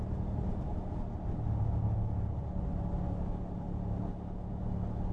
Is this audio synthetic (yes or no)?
no